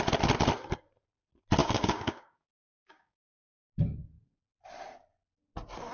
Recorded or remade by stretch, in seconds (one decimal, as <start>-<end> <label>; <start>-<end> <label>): 0.0-1.6 recorded; 1.6-3.8 remade; 3.8-5.9 recorded